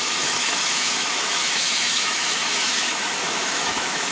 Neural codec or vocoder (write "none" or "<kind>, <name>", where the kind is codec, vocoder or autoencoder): autoencoder, DAC-VAE